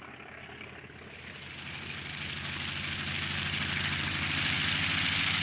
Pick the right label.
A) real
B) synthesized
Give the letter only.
A